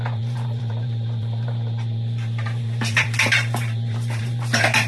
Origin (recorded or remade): remade